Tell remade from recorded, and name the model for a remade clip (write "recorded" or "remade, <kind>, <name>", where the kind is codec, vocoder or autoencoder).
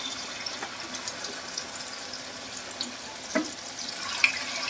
recorded